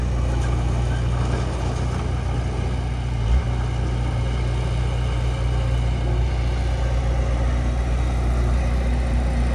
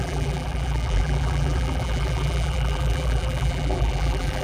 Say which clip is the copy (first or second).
second